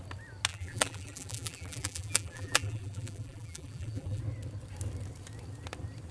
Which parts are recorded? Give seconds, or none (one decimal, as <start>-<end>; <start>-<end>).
0.0-0.5; 4.2-6.1